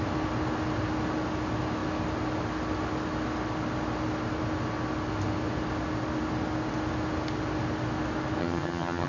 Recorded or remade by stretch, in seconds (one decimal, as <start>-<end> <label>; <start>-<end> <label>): 0.0-8.4 recorded; 8.4-9.1 remade